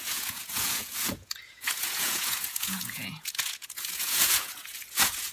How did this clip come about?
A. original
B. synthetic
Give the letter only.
B